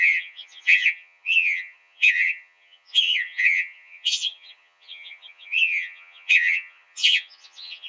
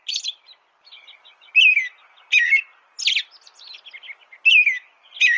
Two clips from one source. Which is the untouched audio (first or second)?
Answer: second